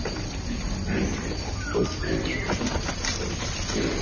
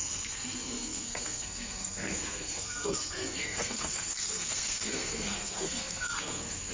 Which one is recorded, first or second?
first